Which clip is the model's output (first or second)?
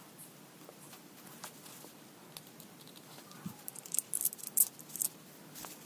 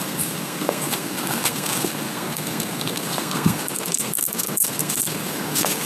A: second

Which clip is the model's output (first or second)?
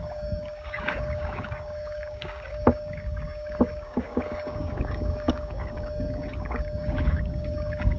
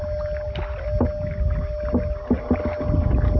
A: first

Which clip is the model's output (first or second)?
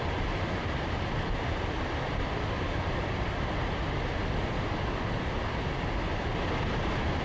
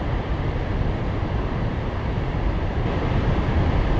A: second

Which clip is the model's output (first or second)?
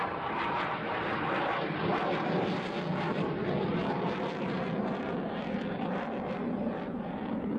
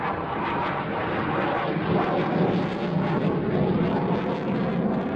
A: first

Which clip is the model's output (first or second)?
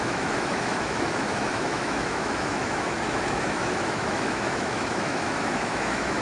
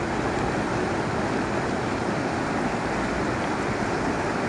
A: first